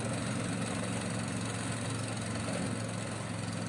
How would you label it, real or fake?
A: real